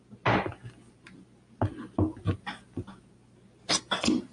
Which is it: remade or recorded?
recorded